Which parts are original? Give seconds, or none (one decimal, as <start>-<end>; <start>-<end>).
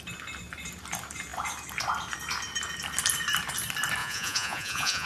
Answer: 0.0-4.0